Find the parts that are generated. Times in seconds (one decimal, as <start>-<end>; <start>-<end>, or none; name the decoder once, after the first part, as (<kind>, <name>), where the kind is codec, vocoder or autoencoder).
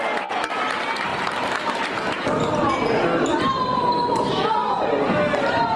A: none